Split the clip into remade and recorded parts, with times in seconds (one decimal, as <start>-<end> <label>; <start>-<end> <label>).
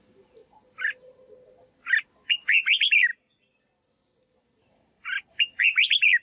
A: 0.0-6.2 recorded